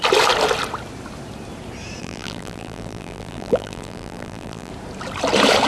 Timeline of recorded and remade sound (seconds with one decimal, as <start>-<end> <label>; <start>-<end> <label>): 0.0-2.0 recorded; 2.0-4.7 remade; 4.7-5.7 recorded